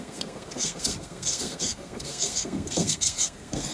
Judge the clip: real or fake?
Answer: fake